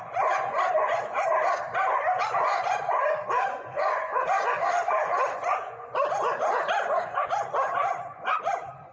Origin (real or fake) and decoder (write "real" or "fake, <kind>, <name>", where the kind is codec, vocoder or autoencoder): fake, vocoder, Vocos